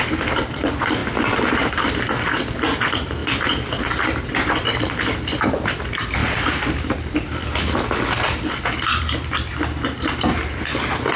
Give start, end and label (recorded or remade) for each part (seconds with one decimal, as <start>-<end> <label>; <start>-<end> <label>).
0.0-1.0 remade; 1.0-1.7 recorded; 1.7-11.2 remade